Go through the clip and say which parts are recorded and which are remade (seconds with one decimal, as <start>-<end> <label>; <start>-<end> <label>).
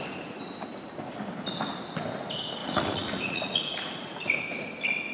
0.0-2.6 recorded; 2.6-4.4 remade; 4.4-5.1 recorded